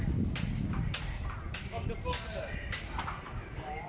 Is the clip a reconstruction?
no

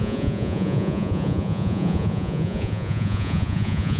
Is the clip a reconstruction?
yes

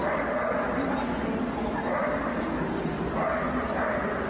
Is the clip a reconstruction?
no